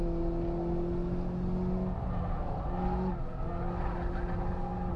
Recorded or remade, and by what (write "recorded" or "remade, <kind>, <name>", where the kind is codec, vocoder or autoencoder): recorded